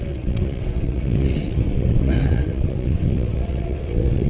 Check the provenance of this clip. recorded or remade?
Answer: remade